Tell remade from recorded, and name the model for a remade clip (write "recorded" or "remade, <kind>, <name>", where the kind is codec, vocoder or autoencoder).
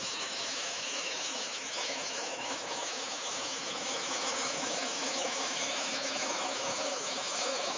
remade, autoencoder, DAC-VAE